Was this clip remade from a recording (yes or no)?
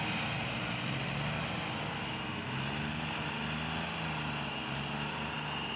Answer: no